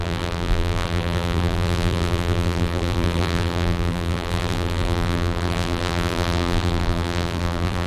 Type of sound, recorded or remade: remade